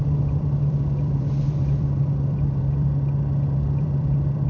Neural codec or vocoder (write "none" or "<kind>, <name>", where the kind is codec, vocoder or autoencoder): vocoder, BigVGAN v2